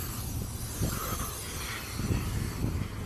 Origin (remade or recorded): recorded